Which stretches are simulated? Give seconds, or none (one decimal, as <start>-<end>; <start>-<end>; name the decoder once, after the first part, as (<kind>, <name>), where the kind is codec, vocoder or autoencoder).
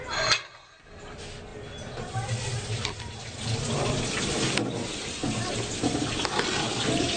none